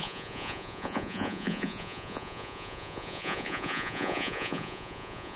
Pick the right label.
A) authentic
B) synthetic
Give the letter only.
B